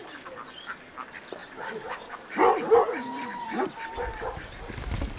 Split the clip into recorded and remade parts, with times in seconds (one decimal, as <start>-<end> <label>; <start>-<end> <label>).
0.0-1.4 recorded; 1.4-4.5 remade; 4.5-5.2 recorded